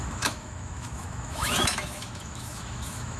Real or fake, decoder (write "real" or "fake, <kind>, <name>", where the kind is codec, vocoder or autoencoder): fake, autoencoder, DAC-VAE